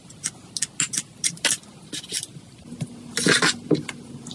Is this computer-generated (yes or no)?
no